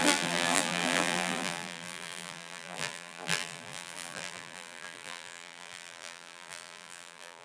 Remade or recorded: remade